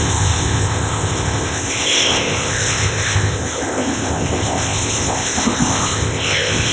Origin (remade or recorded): remade